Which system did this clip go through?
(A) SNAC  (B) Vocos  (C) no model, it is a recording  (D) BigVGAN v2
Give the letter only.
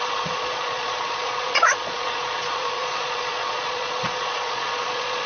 B